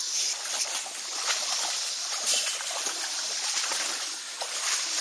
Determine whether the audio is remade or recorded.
recorded